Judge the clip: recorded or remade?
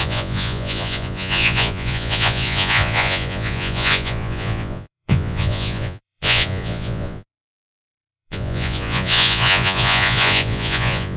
remade